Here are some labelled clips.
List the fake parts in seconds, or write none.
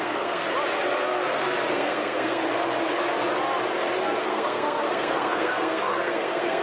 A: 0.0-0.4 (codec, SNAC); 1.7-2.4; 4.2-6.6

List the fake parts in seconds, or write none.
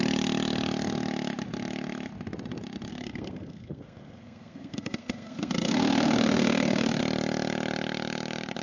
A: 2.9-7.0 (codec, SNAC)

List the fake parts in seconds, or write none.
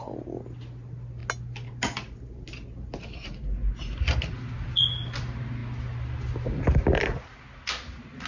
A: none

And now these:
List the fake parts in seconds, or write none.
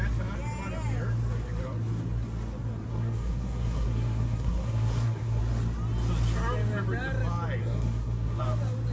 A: 2.9-5.4 (codec, SNAC); 7.6-8.4